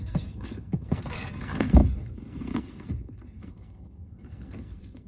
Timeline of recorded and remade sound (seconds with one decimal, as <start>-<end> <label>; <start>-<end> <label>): 0.0-5.1 remade